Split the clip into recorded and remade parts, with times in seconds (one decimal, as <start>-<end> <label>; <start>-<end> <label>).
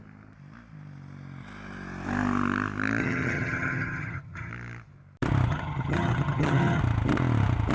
0.0-3.0 recorded; 3.0-4.5 remade; 4.5-5.5 recorded; 5.5-6.8 remade; 6.8-7.7 recorded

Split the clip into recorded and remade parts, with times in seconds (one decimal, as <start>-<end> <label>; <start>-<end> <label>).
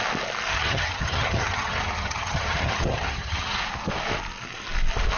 0.0-0.5 recorded; 0.5-3.6 remade; 3.6-5.2 recorded